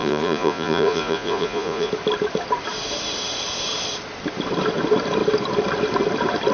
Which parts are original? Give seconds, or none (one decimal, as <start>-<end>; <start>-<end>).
1.9-6.5